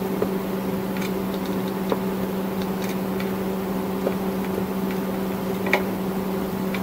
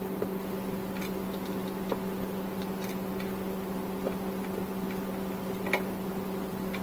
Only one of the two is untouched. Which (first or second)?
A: second